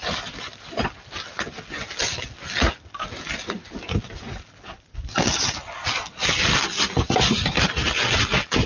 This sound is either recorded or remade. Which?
recorded